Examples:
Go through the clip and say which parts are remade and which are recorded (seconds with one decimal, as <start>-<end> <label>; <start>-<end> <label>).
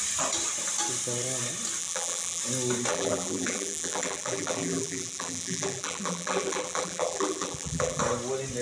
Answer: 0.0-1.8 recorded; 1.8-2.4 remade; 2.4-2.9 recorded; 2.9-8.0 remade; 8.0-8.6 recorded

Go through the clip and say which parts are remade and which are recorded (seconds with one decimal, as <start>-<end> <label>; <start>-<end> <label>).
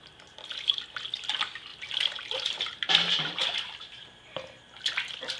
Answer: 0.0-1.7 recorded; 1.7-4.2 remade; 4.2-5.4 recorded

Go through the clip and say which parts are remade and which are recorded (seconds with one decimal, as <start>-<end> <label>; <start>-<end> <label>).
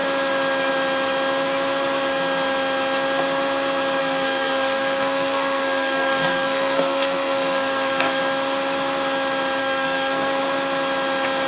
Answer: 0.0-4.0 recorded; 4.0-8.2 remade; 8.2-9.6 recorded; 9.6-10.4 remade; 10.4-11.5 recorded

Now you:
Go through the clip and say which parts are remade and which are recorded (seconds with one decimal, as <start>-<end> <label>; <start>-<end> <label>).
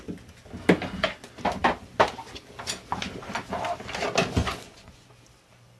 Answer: 0.0-4.4 recorded; 4.4-5.1 remade; 5.1-5.8 recorded